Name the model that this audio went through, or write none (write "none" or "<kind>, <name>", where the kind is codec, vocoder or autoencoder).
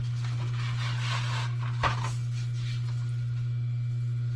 none